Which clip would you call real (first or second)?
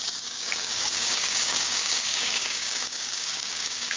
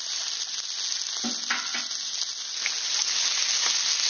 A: second